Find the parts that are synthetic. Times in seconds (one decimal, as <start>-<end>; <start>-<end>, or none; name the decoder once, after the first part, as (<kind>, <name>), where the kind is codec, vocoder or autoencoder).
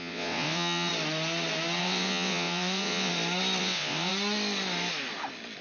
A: 0.0-0.9 (vocoder, WaveNeXt); 1.8-3.1; 3.6-4.1